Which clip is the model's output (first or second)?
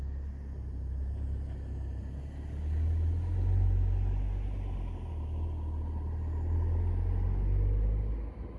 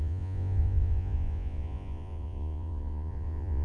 second